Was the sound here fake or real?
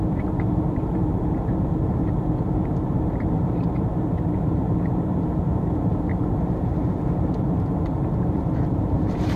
fake